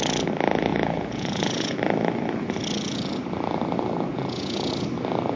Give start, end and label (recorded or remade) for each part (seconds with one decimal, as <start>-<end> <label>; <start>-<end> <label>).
0.0-0.7 recorded; 0.7-1.8 remade; 1.8-4.1 recorded; 4.1-4.7 remade; 4.7-5.4 recorded